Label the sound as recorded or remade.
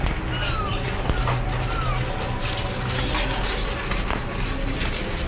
recorded